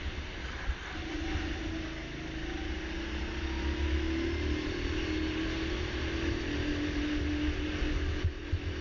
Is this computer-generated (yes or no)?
no